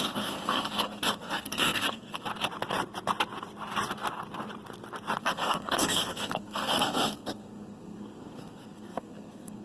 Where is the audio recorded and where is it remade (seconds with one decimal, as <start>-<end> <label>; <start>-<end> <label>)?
0.0-2.3 remade; 2.3-5.2 recorded; 5.2-9.6 remade